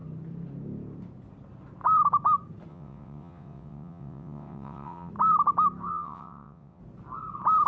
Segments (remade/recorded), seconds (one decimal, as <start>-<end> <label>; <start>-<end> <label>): 0.0-2.7 recorded; 2.7-5.1 remade; 5.1-5.9 recorded; 5.9-6.8 remade; 6.8-7.7 recorded